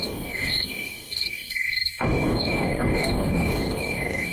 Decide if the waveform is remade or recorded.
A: remade